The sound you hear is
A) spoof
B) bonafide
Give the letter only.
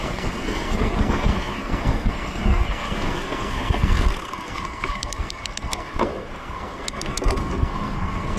A